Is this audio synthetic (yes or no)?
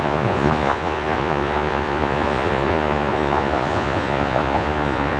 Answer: yes